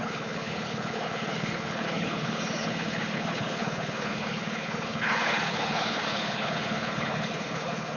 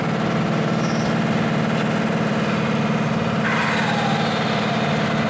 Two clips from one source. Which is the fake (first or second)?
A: first